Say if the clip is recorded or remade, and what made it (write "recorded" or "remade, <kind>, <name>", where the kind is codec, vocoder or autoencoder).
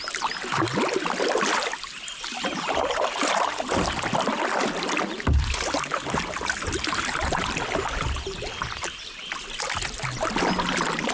recorded